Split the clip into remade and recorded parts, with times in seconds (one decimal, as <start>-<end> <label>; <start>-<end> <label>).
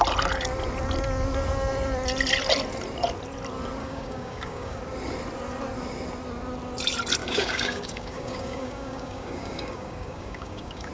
0.0-3.8 recorded; 3.8-4.8 remade; 4.8-7.2 recorded; 7.2-10.9 remade